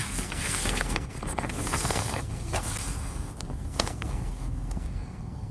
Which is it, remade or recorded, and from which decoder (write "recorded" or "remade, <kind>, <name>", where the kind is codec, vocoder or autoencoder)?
remade, codec, SNAC